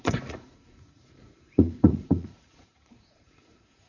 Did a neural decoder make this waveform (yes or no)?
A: yes